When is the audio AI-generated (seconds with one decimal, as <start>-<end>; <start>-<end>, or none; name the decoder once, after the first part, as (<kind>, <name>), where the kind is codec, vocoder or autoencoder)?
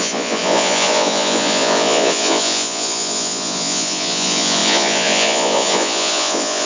0.0-6.7 (vocoder, Vocos)